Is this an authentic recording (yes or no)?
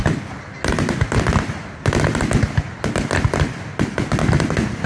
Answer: yes